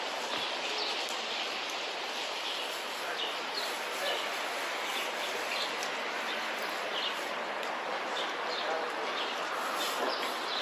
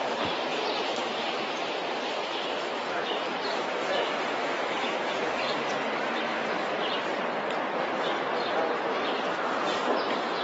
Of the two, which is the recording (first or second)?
first